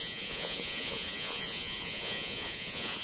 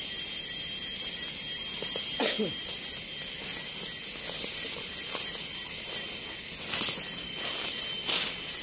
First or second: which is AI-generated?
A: first